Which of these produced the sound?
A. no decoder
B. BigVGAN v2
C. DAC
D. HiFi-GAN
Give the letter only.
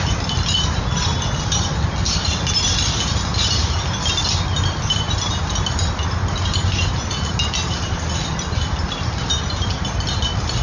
A